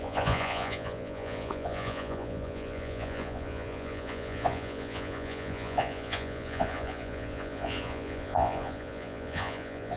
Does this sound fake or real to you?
fake